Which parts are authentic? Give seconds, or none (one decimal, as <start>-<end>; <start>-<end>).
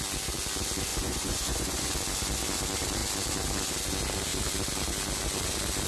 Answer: 0.0-0.9; 1.9-5.9